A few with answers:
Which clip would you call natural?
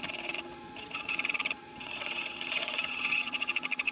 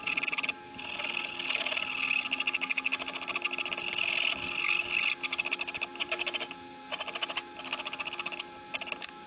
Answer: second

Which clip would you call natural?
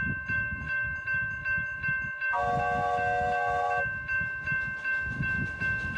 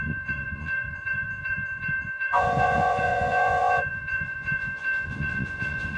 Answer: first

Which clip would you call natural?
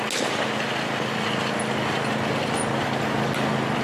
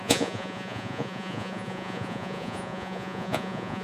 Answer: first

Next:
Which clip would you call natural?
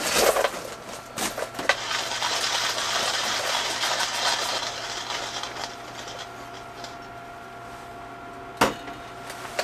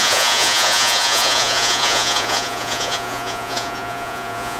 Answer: first